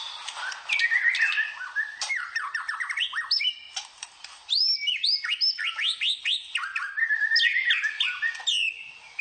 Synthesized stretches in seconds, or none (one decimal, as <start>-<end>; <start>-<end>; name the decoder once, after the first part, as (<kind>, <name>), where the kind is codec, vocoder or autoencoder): none